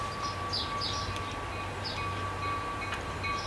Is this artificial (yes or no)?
no